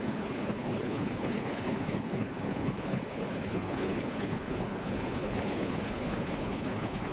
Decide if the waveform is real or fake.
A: fake